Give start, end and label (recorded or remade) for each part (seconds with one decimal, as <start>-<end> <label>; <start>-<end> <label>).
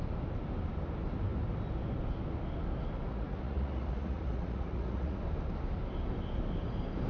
0.0-3.1 recorded; 3.1-5.2 remade; 5.2-7.1 recorded